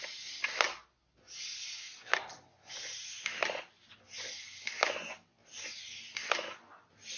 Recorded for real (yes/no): yes